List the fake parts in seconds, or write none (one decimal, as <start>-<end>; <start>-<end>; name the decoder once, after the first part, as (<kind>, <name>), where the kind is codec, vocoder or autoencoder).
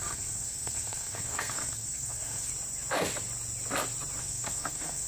0.0-2.5 (codec, SNAC); 4.2-5.1